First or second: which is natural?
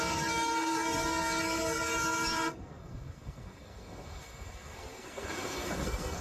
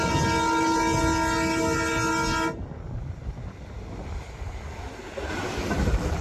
second